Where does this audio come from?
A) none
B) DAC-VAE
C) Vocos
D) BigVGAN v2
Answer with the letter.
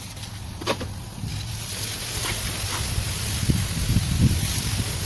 A